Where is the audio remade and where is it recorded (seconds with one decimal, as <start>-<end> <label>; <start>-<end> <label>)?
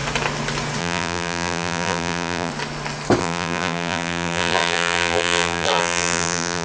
0.0-0.8 recorded; 0.8-2.5 remade; 2.5-3.2 recorded; 3.2-6.6 remade